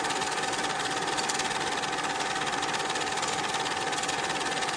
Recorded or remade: recorded